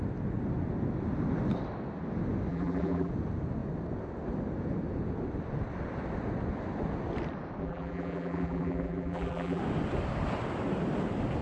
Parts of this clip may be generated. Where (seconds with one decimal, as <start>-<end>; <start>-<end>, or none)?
2.5-3.1; 7.6-9.6